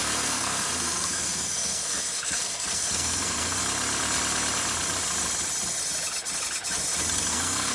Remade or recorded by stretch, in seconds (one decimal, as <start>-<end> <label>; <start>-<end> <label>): 0.0-3.6 remade; 3.6-7.3 recorded; 7.3-7.7 remade